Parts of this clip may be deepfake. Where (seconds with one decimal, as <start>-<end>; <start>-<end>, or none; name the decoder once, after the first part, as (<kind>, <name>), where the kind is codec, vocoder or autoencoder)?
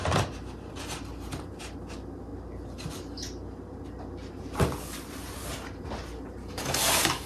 6.4-7.3 (codec, DAC)